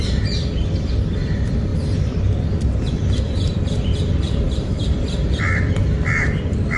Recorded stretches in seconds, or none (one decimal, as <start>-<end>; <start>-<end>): none